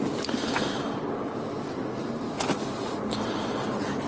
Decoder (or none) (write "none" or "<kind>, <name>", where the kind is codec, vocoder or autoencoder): none